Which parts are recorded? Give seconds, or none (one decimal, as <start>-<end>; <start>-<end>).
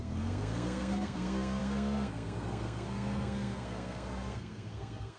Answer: none